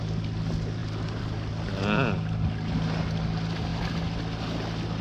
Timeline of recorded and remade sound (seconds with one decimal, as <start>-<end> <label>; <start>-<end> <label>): 0.0-0.8 recorded; 0.8-1.5 remade; 1.5-5.0 recorded